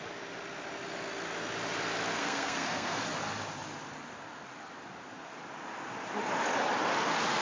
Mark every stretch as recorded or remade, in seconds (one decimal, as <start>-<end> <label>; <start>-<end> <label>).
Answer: 0.0-2.1 recorded; 2.1-3.0 remade; 3.0-7.4 recorded